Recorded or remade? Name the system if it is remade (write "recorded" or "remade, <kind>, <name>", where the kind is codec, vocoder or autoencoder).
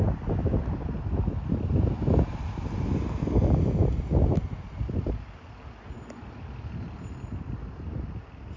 recorded